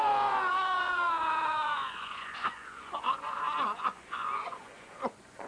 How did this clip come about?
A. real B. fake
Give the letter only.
B